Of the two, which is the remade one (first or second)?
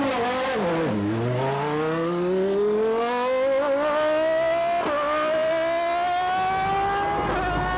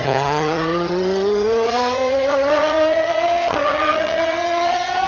second